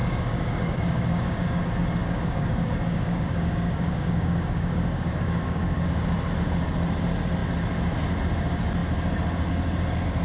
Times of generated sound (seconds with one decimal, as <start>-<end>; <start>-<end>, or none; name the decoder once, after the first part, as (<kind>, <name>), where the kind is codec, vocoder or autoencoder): 0.0-1.6 (codec, DAC); 2.0-5.9